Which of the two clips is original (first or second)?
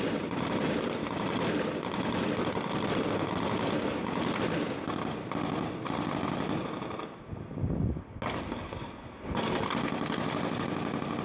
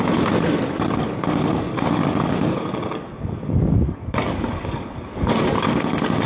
first